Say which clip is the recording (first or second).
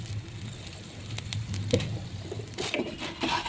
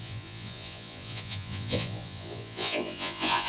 first